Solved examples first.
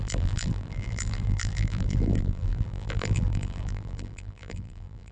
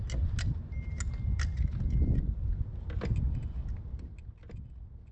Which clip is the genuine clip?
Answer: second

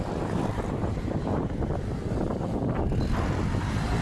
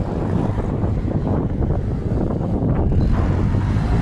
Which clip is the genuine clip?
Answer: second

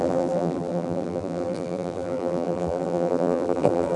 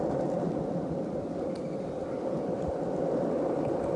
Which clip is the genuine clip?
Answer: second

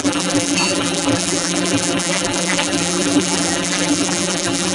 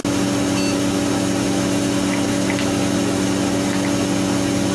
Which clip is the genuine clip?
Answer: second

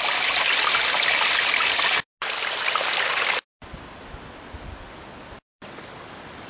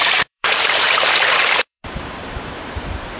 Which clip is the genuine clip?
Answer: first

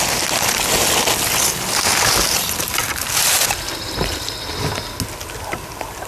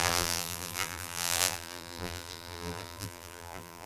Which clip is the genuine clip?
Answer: first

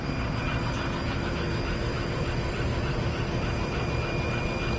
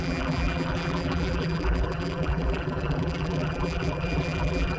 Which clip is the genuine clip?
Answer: first